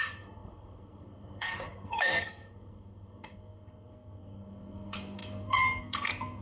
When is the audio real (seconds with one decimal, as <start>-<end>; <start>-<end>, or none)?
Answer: none